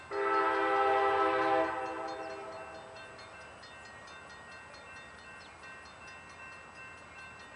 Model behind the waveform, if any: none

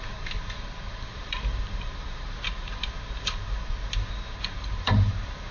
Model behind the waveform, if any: vocoder, BigVGAN v2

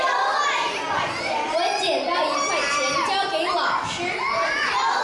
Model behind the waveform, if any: none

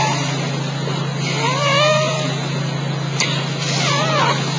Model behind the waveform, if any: none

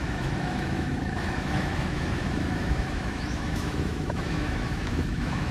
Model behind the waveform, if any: autoencoder, DAC-VAE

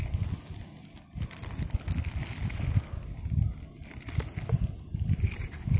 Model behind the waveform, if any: none